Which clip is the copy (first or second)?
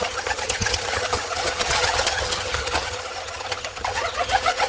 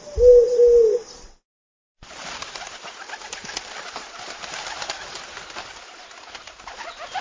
first